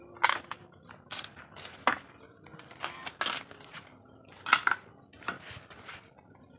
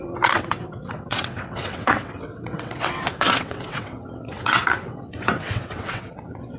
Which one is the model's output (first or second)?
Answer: second